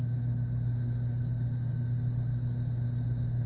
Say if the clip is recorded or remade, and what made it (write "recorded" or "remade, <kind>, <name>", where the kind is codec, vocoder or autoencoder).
recorded